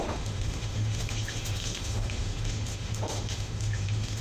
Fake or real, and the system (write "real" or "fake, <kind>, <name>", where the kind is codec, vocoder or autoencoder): fake, autoencoder, DAC-VAE